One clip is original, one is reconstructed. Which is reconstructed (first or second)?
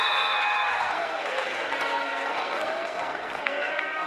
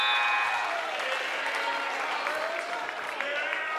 first